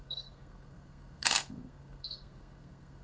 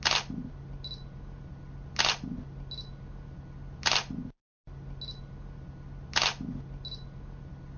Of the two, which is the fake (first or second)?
first